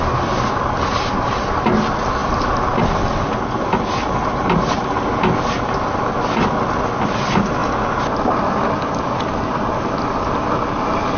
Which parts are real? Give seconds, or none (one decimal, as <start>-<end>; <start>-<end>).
0.0-11.2